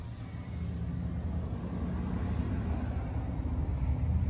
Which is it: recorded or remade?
recorded